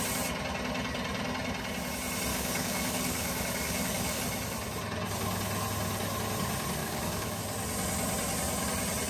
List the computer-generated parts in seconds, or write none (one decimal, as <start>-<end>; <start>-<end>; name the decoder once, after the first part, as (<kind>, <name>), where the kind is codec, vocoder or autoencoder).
2.3-4.2 (codec, DAC); 6.8-7.4